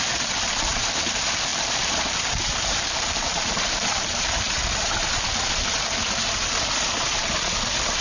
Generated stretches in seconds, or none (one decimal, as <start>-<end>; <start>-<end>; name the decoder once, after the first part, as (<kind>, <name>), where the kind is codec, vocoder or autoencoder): 1.5-5.1 (vocoder, BigVGAN v2)